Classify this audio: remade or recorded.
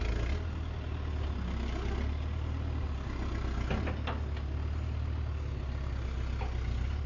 recorded